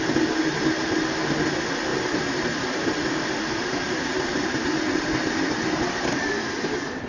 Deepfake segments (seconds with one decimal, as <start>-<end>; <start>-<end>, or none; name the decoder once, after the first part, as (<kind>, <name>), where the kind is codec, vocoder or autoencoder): none